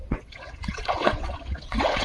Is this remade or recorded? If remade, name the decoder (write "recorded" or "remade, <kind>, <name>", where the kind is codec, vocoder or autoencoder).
remade, vocoder, WaveNeXt